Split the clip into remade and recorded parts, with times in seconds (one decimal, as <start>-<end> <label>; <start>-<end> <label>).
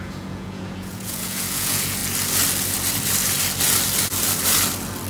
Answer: 0.0-2.0 remade; 2.0-5.1 recorded